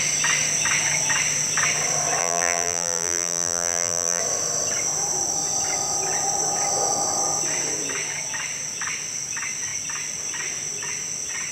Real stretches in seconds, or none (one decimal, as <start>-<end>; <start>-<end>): 0.0-2.2; 4.2-11.5